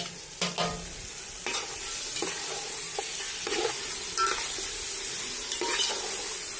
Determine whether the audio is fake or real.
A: real